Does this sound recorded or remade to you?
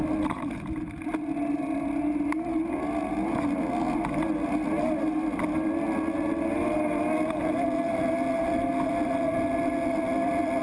recorded